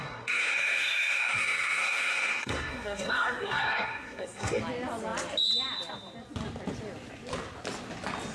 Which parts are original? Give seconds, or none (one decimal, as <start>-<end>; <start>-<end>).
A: 4.6-8.3